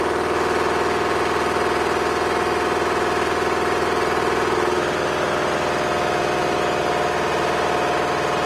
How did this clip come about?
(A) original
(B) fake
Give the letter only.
A